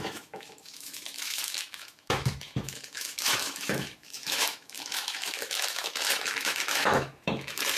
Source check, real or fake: fake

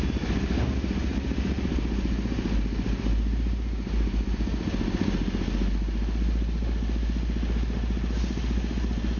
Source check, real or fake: real